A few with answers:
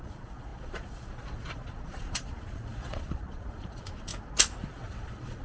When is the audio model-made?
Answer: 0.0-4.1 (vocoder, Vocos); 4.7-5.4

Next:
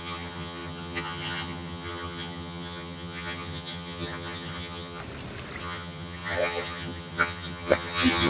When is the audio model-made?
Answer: 0.0-5.0 (vocoder, HiFi-GAN); 5.6-8.3

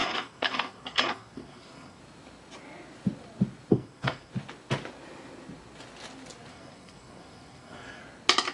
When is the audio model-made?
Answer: 0.0-2.0 (codec, SNAC); 3.7-4.3; 6.5-8.0

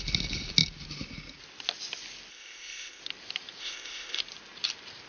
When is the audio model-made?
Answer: 2.3-3.0 (codec, ZipCodec); 3.6-4.2

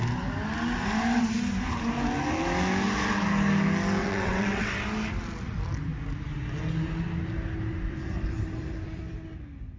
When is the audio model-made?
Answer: 4.0-4.7 (vocoder, WaveNeXt)